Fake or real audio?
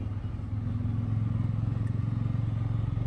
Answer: real